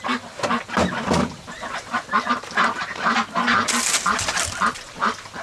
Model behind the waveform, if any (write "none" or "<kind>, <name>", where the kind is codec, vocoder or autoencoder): none